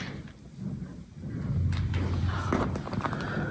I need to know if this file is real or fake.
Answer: real